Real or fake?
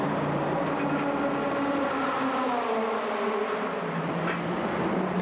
real